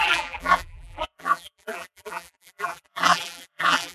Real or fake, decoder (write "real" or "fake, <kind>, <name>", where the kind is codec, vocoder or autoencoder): fake, vocoder, BigVGAN v2